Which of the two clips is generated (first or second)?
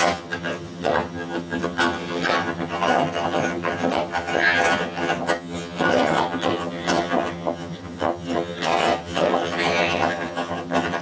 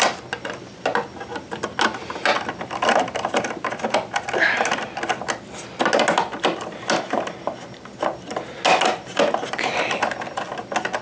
first